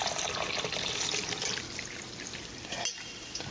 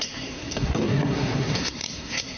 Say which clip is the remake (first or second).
second